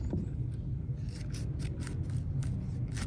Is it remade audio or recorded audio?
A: recorded